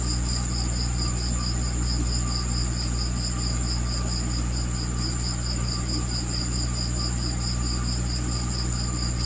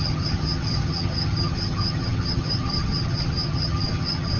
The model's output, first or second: second